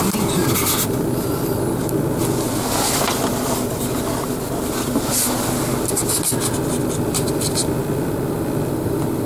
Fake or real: real